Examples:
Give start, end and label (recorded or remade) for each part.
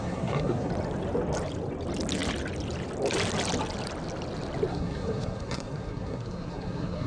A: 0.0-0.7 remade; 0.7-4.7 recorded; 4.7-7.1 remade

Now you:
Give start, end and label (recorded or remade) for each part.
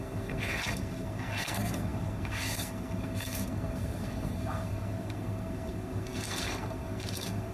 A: 0.0-7.5 remade